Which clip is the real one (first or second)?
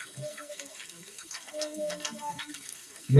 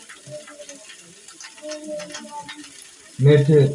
second